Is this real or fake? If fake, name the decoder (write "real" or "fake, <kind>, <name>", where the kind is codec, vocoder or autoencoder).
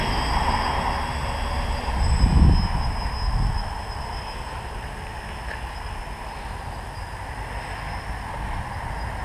real